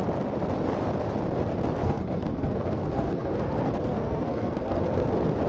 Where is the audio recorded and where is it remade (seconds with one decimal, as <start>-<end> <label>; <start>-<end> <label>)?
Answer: 0.0-1.8 recorded; 1.8-5.1 remade; 5.1-5.5 recorded